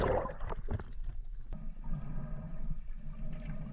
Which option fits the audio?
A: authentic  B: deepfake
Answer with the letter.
A